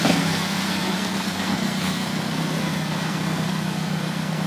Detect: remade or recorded remade